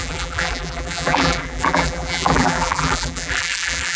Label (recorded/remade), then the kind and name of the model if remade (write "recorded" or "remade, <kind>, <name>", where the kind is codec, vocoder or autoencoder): remade, vocoder, BigVGAN v2